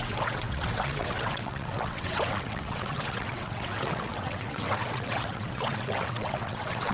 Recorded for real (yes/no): no